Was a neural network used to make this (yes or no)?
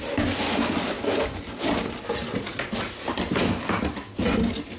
no